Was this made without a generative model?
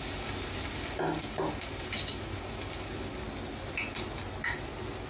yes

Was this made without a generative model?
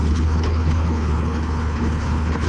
no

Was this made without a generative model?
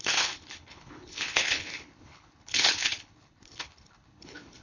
no